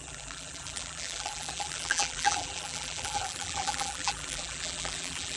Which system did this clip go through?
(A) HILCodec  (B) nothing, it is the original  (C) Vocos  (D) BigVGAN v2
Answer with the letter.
D